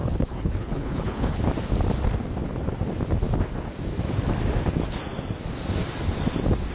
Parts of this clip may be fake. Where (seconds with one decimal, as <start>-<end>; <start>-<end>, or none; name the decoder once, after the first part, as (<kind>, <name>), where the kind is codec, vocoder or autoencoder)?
0.0-1.4 (codec, HILCodec)